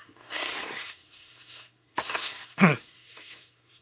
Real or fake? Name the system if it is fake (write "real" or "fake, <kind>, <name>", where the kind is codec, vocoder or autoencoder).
fake, codec, SNAC